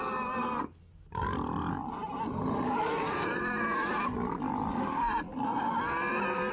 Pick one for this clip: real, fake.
real